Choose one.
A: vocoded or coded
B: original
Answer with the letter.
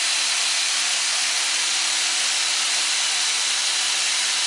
B